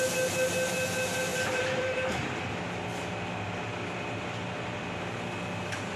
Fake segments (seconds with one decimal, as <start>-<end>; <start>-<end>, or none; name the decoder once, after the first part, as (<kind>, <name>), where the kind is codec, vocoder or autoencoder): 1.3-2.4 (vocoder, BigVGAN v2)